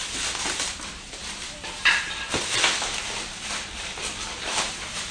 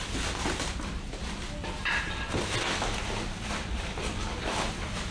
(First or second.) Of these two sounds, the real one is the second